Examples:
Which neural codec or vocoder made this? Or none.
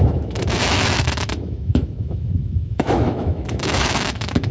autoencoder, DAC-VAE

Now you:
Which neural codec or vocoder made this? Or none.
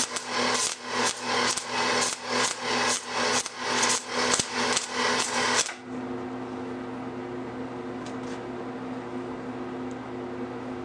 none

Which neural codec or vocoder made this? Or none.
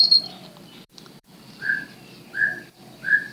vocoder, BigVGAN v2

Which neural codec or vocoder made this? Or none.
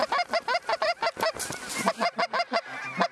none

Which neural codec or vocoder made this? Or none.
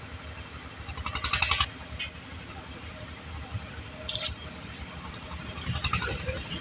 none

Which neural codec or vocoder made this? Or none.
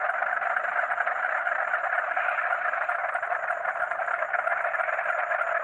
none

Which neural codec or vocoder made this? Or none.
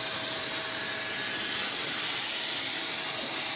none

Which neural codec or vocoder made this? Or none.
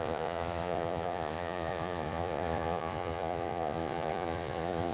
vocoder, Vocos